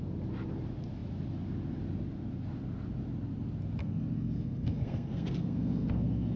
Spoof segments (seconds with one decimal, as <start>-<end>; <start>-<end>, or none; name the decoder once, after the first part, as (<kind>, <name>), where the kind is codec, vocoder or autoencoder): 3.8-6.4 (codec, SNAC)